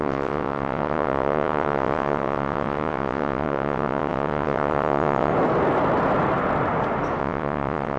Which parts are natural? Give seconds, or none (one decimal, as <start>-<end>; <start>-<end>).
5.3-7.2